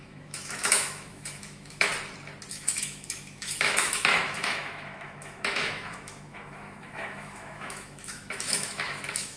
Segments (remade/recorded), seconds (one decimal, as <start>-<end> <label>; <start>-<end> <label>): 0.0-1.9 remade; 1.9-2.5 recorded; 2.5-9.4 remade